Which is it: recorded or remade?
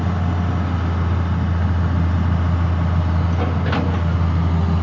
recorded